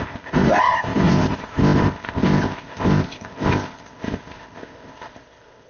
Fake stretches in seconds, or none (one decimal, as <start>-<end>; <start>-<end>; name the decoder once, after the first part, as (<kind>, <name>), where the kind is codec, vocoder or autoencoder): 0.0-5.7 (codec, ZipCodec)